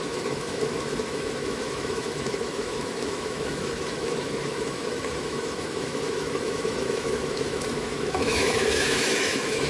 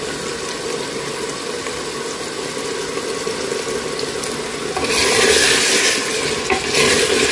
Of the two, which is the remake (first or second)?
first